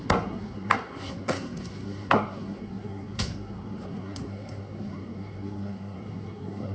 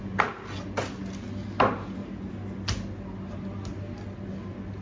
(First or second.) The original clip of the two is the second